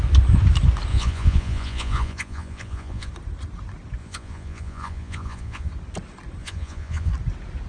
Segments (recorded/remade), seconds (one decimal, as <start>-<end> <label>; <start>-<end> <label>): 0.0-0.9 recorded; 0.9-3.1 remade; 3.1-4.0 recorded; 4.0-5.7 remade; 5.7-6.4 recorded; 6.4-7.1 remade; 7.1-7.7 recorded